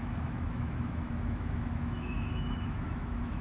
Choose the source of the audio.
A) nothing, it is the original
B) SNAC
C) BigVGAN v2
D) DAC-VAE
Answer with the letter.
D